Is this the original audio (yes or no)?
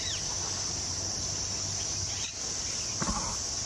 yes